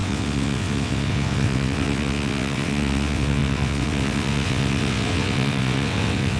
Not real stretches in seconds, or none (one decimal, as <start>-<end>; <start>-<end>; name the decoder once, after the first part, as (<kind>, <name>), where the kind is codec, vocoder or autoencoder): 0.0-6.4 (vocoder, WaveNeXt)